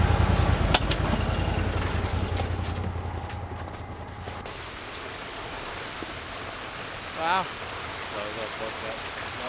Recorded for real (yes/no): yes